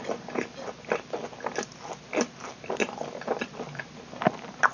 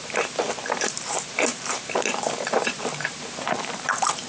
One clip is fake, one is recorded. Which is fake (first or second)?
second